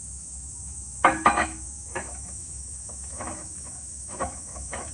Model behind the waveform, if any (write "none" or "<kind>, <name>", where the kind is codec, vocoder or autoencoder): autoencoder, DAC-VAE